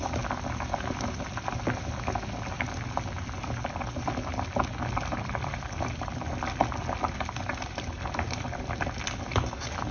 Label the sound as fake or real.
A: real